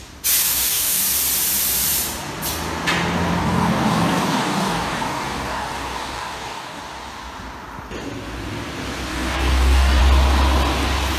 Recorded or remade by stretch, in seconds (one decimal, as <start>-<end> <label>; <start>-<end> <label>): 0.0-0.4 recorded; 0.4-1.0 remade; 1.0-3.4 recorded; 3.4-6.8 remade; 6.8-9.1 recorded; 9.1-10.0 remade; 10.0-11.2 recorded